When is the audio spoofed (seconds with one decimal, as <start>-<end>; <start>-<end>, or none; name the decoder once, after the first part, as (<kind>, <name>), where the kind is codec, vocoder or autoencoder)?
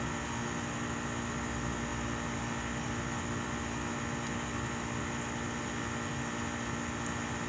none